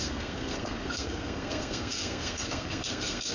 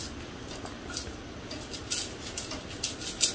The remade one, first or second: first